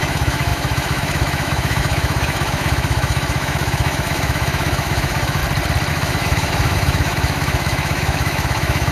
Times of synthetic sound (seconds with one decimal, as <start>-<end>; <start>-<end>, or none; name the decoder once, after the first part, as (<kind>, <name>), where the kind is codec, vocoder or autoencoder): 0.0-5.4 (autoencoder, DAC-VAE); 5.9-8.9